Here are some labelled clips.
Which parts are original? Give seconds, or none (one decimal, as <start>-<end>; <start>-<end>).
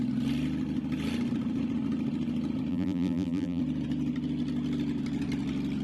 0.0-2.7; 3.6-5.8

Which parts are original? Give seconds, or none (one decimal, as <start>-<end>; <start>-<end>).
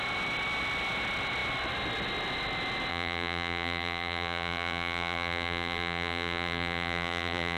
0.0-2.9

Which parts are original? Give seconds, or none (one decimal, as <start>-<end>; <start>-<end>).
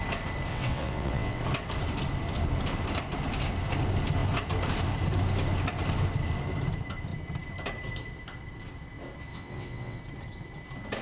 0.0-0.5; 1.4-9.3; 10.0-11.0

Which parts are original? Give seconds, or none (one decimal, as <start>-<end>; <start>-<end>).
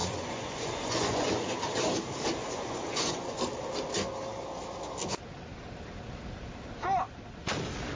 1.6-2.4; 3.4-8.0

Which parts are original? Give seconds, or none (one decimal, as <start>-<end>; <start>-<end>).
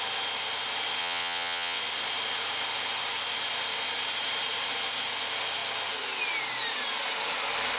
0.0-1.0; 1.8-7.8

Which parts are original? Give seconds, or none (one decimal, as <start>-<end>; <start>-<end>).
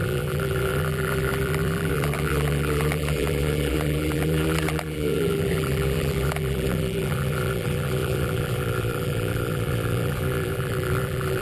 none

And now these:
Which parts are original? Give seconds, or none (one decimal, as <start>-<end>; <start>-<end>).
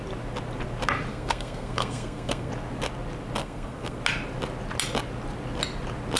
0.0-1.1; 2.5-3.4; 4.0-6.2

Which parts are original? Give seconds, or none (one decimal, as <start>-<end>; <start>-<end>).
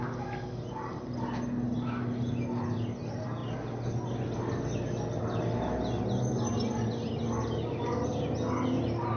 0.0-9.2